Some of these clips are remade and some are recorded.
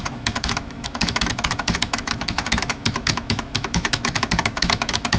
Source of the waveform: remade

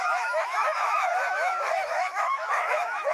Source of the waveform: remade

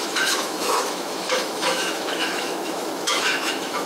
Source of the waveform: remade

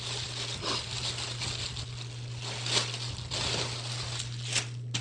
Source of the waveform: recorded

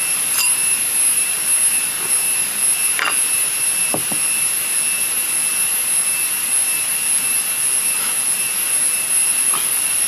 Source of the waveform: recorded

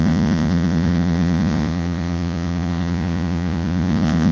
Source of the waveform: remade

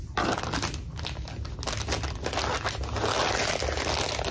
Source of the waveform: recorded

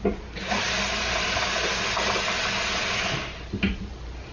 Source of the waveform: recorded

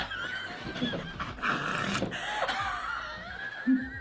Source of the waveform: recorded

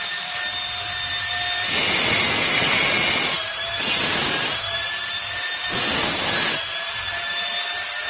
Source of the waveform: recorded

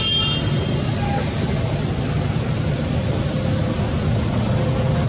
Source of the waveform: recorded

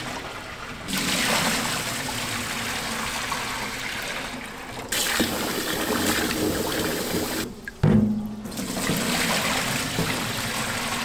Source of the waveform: recorded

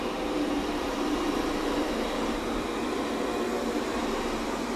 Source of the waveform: remade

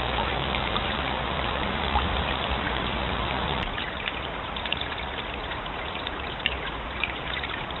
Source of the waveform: remade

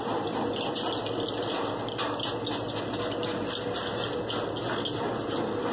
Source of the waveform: recorded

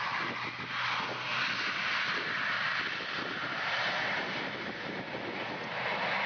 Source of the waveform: recorded